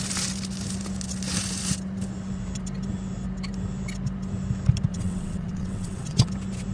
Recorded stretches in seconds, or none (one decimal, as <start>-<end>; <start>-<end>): 0.0-4.9; 6.3-6.7